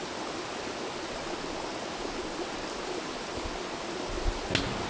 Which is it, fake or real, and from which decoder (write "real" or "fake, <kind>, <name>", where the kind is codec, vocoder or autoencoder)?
real